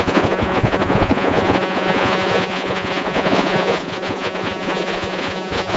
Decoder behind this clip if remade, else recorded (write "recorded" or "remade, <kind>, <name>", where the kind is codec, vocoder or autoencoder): remade, vocoder, Vocos